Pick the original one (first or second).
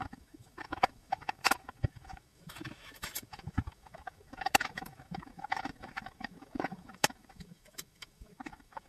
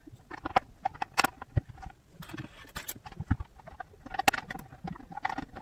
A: second